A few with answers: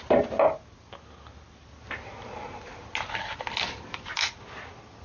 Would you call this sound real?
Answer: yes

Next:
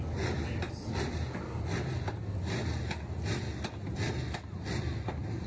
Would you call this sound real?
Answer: yes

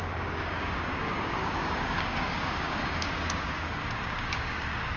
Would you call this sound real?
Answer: no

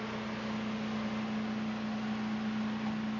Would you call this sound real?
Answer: yes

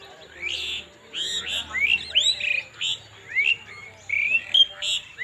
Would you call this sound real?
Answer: yes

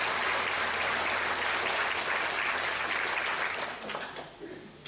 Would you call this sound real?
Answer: yes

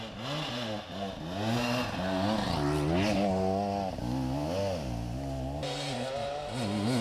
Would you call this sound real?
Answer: yes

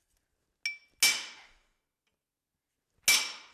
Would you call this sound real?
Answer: yes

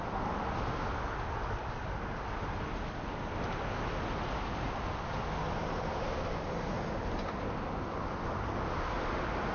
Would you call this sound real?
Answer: yes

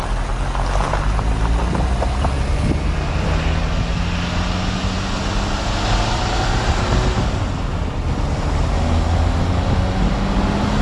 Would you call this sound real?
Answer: yes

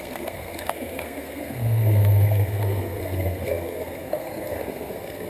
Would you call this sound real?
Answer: no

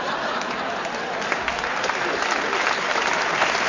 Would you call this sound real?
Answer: yes